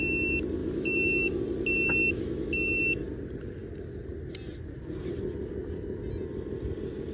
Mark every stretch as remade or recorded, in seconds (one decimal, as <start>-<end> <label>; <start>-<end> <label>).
0.0-0.6 recorded; 0.6-1.4 remade; 1.4-2.0 recorded; 2.0-2.8 remade; 2.8-7.1 recorded